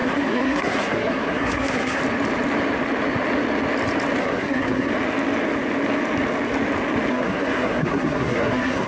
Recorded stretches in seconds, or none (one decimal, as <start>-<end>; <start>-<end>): 2.0-4.2; 4.9-7.1